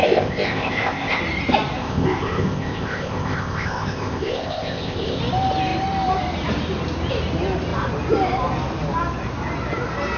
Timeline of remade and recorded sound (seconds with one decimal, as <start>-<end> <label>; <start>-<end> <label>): 0.0-1.2 remade; 1.2-1.8 recorded; 1.8-5.2 remade; 5.2-10.2 recorded